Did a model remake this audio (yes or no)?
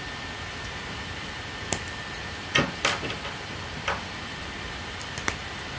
yes